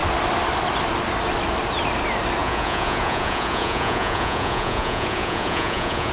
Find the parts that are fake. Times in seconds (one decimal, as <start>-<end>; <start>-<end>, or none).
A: 2.4-6.1